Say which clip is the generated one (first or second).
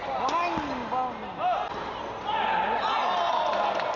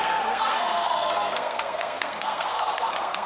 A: second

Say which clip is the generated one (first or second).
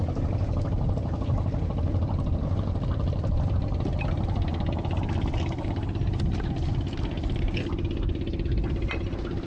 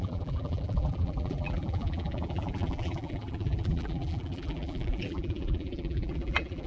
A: second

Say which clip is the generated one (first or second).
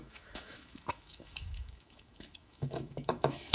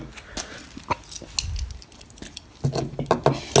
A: first